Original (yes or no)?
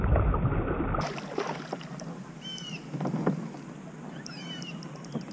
yes